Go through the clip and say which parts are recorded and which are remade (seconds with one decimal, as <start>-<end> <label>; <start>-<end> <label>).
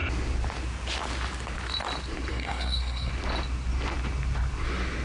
0.0-2.3 recorded; 2.3-3.1 remade; 3.1-5.0 recorded